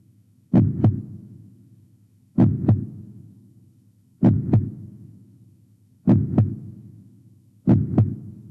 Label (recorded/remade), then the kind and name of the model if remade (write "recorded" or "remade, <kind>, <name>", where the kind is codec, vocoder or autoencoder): remade, autoencoder, DAC-VAE